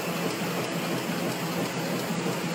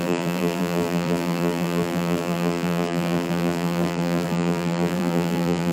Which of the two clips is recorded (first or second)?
first